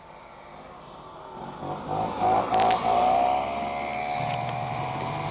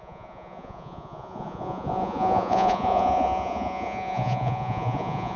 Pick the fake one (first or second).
second